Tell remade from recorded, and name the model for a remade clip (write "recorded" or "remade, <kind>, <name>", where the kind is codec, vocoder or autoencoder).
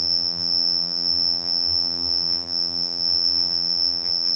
remade, vocoder, BigVGAN v2